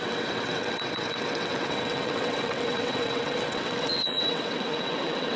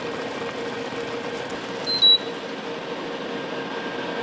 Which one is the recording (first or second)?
second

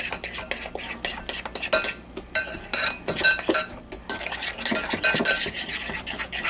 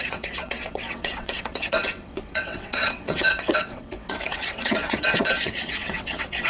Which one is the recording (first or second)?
first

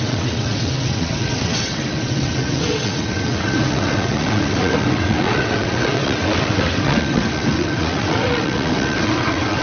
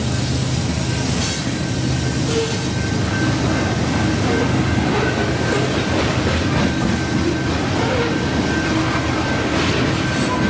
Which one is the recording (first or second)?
second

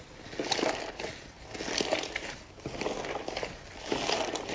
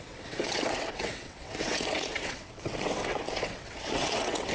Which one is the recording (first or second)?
first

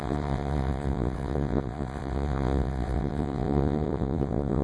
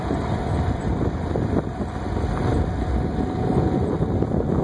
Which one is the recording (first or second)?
second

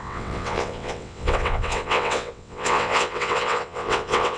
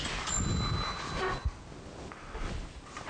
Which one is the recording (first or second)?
second